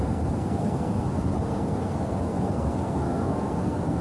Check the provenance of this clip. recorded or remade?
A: remade